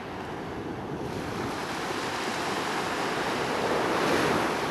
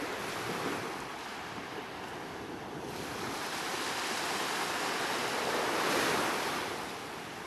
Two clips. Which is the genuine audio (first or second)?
first